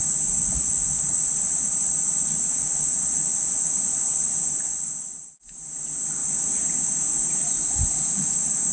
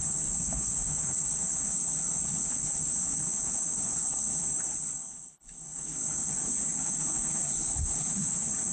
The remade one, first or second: second